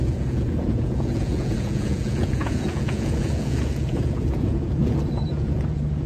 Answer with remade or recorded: remade